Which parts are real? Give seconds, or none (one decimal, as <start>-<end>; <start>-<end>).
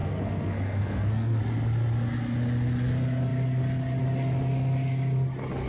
1.4-5.7